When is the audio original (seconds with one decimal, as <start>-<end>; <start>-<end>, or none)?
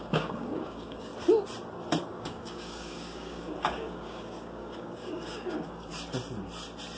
1.1-2.0; 5.9-7.0